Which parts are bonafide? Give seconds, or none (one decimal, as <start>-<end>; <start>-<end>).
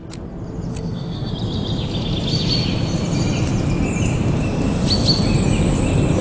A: 0.0-0.7; 1.3-6.2